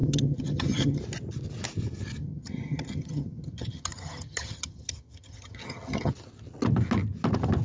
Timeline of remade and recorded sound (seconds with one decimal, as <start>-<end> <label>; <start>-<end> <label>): 0.0-1.0 remade; 1.0-2.2 recorded; 2.2-6.1 remade; 6.1-7.6 recorded